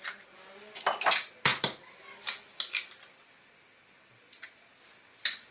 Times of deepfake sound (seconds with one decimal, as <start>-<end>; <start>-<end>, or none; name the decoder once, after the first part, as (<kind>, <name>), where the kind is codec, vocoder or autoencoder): none